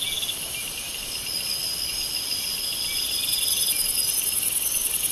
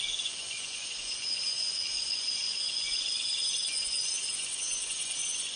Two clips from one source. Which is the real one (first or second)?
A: first